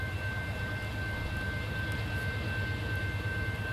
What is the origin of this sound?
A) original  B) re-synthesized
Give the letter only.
A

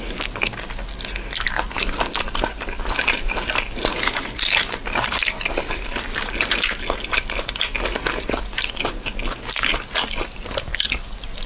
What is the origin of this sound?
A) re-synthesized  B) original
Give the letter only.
B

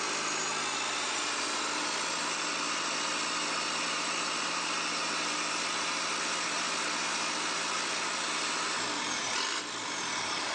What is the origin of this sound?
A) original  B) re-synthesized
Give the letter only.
A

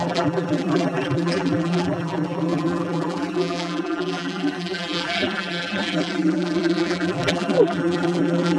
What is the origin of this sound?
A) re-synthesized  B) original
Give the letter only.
A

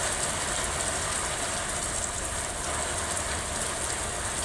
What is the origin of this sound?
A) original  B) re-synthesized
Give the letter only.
A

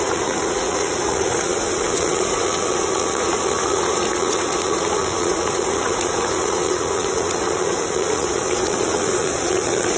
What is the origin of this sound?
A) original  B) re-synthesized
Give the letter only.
B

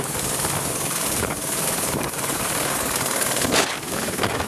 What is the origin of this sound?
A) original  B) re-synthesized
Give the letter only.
B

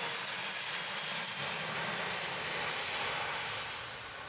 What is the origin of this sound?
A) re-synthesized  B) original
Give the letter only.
B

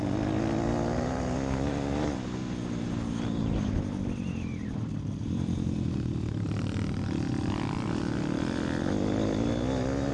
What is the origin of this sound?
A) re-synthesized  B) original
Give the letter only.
B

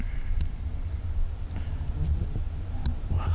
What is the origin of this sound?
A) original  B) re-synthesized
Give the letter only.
A